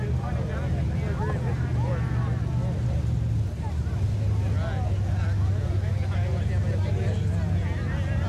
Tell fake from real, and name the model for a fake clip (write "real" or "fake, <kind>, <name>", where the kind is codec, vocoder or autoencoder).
real